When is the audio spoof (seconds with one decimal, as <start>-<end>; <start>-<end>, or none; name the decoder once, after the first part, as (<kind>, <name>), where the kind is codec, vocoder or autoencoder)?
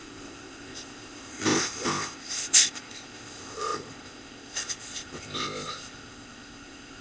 0.0-7.0 (codec, ZipCodec)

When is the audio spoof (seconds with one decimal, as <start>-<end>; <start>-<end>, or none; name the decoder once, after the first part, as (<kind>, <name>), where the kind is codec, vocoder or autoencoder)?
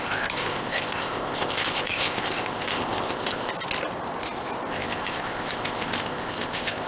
0.0-3.5 (codec, ZipCodec); 4.7-6.9